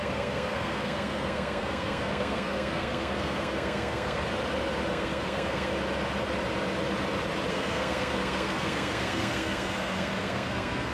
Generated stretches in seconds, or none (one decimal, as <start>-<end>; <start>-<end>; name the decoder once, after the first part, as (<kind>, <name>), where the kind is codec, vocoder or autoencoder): 0.0-4.2 (codec, SNAC); 4.9-5.7; 7.5-10.9